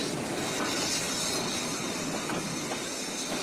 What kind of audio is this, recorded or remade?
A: recorded